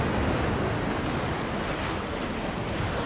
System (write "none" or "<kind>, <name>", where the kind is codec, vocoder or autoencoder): none